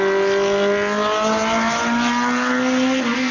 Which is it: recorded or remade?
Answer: recorded